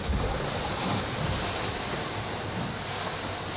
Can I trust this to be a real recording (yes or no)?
yes